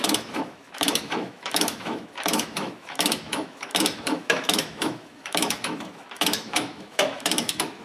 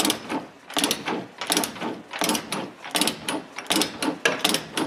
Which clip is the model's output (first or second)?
first